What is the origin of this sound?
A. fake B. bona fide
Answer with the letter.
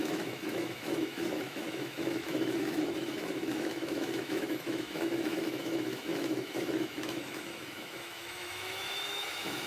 A